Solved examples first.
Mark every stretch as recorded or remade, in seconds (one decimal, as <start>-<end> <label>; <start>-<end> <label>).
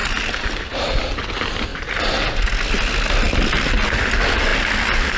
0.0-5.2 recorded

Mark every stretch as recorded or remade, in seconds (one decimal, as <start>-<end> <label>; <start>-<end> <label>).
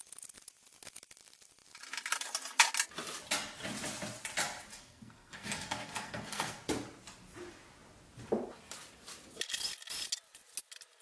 0.0-4.7 recorded; 4.7-6.6 remade; 6.6-11.0 recorded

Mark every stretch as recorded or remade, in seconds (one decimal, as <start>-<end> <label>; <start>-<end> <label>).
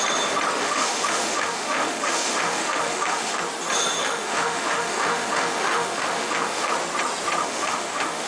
0.0-0.6 recorded; 0.6-3.4 remade; 3.4-4.0 recorded; 4.0-6.7 remade; 6.7-7.4 recorded; 7.4-8.3 remade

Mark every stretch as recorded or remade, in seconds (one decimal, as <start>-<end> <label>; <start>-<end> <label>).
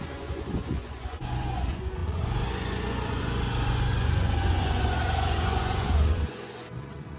0.0-7.2 remade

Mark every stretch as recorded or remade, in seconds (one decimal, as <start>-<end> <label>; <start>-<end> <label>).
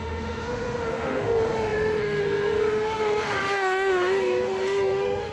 0.0-5.3 remade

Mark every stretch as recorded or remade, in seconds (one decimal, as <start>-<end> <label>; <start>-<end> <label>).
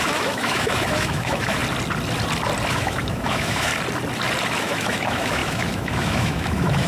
0.0-1.6 remade; 1.6-2.7 recorded; 2.7-3.7 remade; 3.7-4.6 recorded; 4.6-6.9 remade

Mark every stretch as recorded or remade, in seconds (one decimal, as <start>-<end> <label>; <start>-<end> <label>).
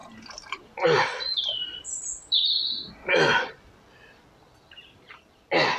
0.0-2.9 remade; 2.9-5.8 recorded